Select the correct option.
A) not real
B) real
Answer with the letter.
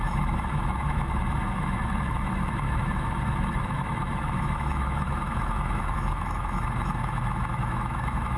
A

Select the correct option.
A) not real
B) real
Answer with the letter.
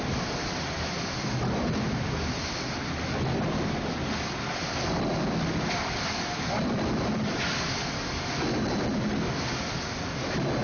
B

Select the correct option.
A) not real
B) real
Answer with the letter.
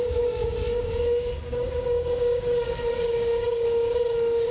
A